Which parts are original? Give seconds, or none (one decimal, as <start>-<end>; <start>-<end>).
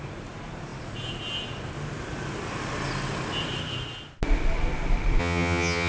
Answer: 0.0-5.2